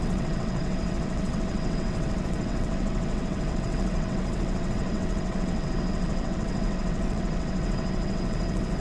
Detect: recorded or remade remade